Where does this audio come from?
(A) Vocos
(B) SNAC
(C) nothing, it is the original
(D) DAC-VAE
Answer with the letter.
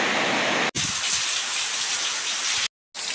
C